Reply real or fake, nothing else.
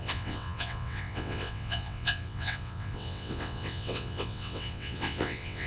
fake